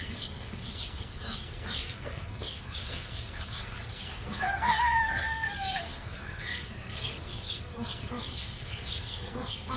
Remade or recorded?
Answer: remade